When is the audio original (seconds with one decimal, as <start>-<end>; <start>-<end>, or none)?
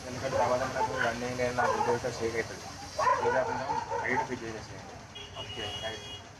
0.0-5.2; 5.8-6.4